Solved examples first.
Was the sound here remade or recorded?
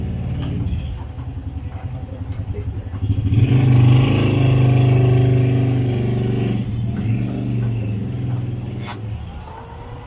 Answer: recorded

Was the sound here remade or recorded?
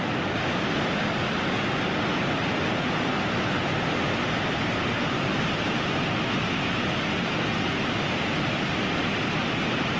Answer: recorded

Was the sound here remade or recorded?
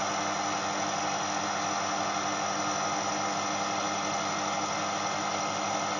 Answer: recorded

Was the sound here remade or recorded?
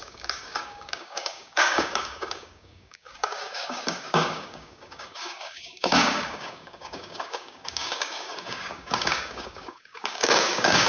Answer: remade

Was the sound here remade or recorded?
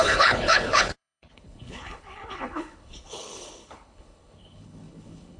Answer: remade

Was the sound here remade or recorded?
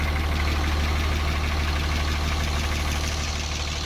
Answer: recorded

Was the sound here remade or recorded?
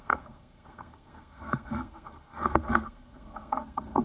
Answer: remade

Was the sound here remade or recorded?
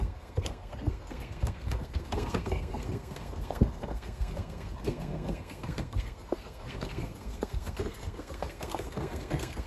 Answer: remade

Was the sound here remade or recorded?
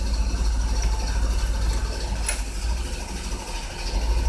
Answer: recorded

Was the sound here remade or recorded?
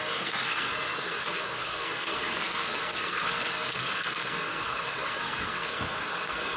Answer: remade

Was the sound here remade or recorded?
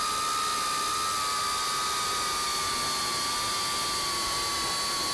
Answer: recorded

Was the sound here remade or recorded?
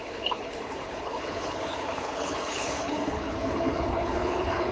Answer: remade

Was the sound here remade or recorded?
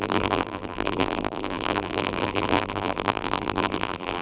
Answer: remade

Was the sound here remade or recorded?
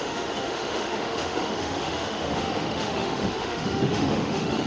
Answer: remade